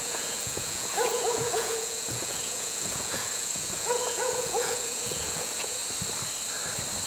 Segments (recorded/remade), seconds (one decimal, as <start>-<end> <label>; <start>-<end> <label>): 0.0-5.8 remade; 5.8-7.1 recorded